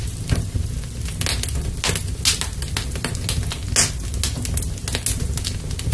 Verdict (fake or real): real